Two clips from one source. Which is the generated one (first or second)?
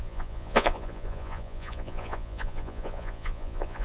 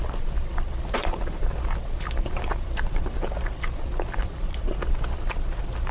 first